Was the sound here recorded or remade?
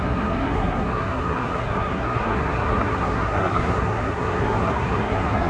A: remade